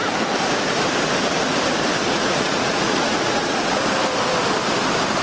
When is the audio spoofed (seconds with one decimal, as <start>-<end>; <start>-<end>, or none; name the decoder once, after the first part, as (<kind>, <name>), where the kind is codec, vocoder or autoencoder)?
2.0-3.8 (vocoder, Vocos)